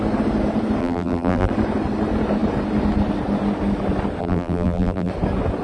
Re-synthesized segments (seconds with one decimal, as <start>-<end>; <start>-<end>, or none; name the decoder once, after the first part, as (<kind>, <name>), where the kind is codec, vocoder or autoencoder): 0.8-1.5 (vocoder, BigVGAN v2); 4.2-5.1